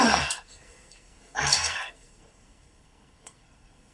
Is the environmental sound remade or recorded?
remade